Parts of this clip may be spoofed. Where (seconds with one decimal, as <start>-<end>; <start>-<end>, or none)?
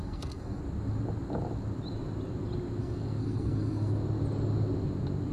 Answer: 0.0-0.6; 2.8-3.9